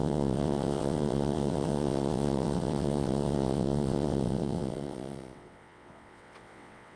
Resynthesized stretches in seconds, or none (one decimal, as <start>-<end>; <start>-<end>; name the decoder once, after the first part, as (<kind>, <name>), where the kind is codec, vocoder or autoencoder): 0.0-7.0 (vocoder, WaveNeXt)